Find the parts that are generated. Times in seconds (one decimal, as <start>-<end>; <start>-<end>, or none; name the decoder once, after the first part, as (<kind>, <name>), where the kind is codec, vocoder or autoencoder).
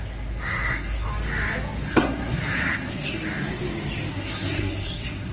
0.0-1.1 (codec, SNAC); 1.9-3.2; 4.1-5.3